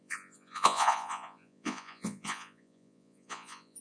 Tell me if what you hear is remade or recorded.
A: remade